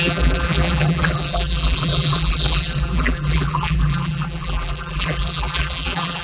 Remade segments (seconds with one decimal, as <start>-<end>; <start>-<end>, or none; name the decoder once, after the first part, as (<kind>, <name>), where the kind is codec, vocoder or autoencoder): 0.0-6.2 (vocoder, BigVGAN v2)